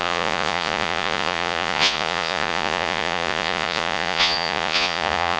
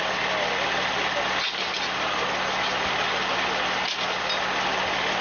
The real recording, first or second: second